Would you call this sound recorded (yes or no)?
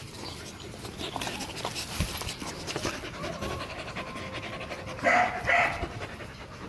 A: yes